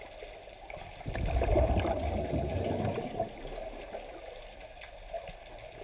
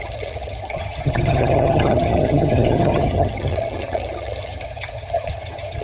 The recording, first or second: first